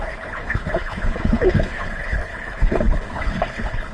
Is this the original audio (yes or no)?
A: no